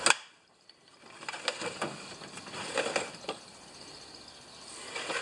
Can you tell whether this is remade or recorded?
recorded